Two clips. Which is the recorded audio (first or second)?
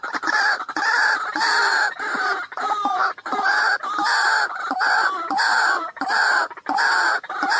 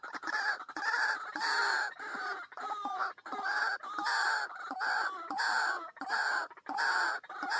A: second